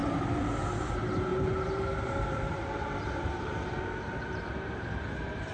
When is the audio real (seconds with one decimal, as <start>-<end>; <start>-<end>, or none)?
0.6-1.3; 4.4-5.5